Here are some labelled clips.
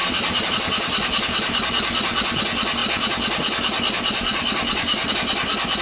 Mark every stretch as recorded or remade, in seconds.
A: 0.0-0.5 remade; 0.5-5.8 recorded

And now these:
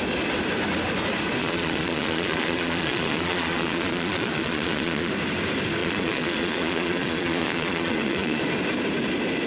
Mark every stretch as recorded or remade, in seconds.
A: 0.0-1.4 recorded; 1.4-5.1 remade; 5.1-5.8 recorded; 5.8-8.4 remade; 8.4-9.5 recorded